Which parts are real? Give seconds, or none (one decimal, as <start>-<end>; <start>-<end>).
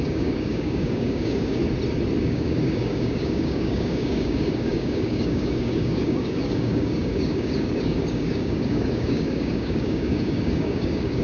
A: 1.6-2.2